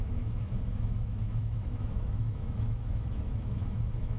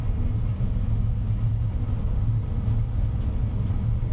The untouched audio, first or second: second